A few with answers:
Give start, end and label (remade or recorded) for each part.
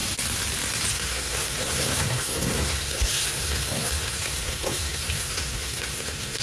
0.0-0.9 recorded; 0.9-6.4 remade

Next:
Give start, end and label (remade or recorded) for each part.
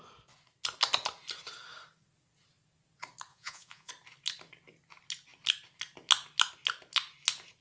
0.0-3.3 recorded; 3.3-3.9 remade; 3.9-7.6 recorded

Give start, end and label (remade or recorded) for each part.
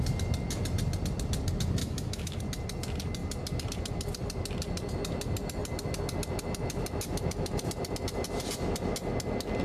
0.0-1.8 recorded; 1.8-2.4 remade; 2.4-9.6 recorded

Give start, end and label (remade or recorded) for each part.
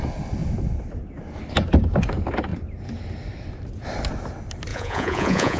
0.0-4.7 recorded; 4.7-5.6 remade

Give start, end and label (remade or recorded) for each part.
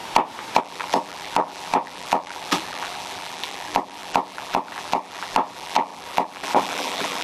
0.0-0.6 recorded; 0.6-7.2 remade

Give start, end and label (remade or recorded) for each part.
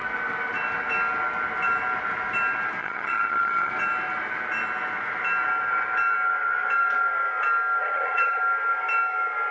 0.0-2.8 recorded; 2.8-3.7 remade; 3.7-7.8 recorded; 7.8-8.4 remade; 8.4-9.5 recorded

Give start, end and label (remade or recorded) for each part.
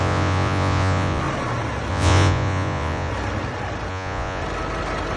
0.0-1.2 remade; 1.2-1.9 recorded; 1.9-3.1 remade; 3.1-3.9 recorded; 3.9-4.4 remade; 4.4-5.2 recorded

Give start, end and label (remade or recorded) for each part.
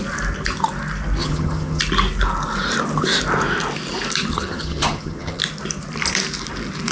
0.0-1.2 recorded; 1.2-1.8 remade; 1.8-4.3 recorded; 4.3-5.4 remade; 5.4-6.9 recorded